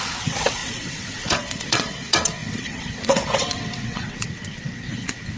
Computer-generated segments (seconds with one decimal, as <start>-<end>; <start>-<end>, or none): 0.0-5.4